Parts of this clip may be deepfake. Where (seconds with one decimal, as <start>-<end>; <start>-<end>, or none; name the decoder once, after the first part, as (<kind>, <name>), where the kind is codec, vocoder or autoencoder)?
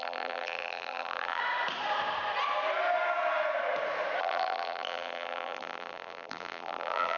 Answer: 0.0-1.4 (vocoder, BigVGAN v2); 4.2-7.2